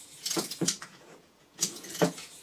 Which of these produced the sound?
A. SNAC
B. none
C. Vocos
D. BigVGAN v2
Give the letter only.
C